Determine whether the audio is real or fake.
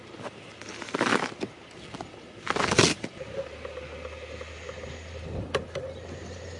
real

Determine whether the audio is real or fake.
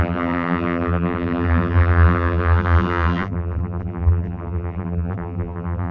fake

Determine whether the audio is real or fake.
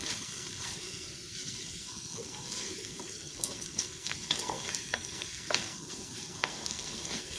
fake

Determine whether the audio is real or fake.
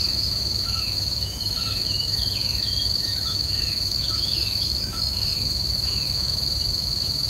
fake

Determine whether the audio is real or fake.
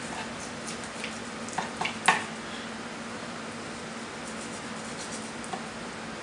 real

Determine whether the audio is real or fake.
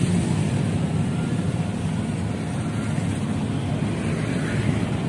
real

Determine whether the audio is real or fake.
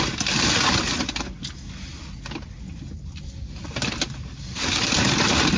real